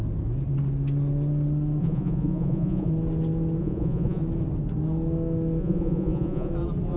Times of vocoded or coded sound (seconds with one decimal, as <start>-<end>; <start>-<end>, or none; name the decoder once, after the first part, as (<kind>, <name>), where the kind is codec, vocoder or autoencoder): 1.8-2.9 (vocoder, Vocos); 3.6-4.2; 5.6-6.5